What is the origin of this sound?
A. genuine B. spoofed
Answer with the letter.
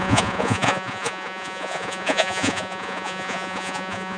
B